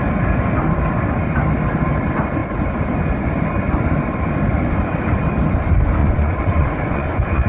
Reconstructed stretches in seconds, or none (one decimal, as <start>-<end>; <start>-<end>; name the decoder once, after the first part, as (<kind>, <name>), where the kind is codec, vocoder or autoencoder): 6.0-7.5 (vocoder, Vocos)